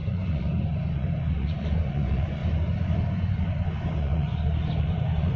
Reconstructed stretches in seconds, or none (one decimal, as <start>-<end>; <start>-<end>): 0.0-2.4; 3.1-4.3; 4.8-5.4